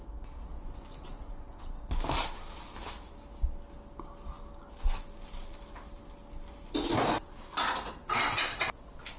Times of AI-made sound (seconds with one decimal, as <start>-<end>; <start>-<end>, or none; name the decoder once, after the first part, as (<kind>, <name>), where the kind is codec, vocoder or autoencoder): 0.5-1.6 (vocoder, Vocos)